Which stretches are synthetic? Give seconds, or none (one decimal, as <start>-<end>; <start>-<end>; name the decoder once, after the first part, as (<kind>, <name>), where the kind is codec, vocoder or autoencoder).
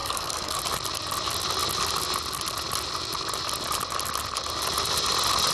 0.0-0.6 (codec, SNAC)